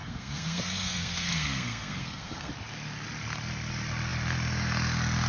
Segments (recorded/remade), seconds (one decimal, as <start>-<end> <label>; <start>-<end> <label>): 0.0-2.5 remade; 2.5-5.3 recorded